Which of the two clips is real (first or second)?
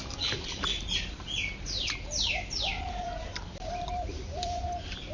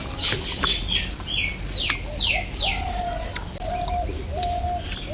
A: second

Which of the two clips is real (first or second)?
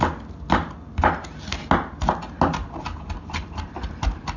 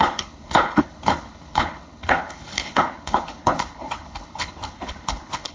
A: first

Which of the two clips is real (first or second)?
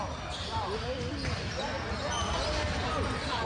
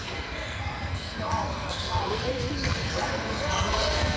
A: first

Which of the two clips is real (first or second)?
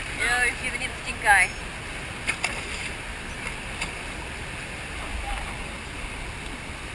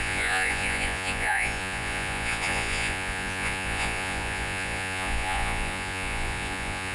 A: first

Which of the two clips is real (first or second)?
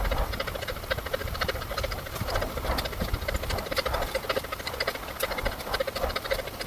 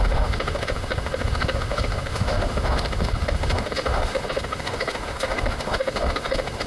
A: first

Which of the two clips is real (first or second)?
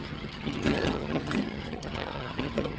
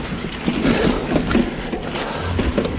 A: second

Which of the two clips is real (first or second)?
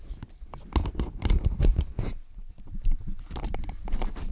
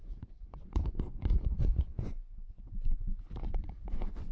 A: first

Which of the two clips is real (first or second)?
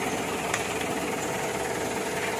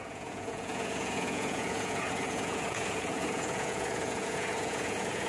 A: first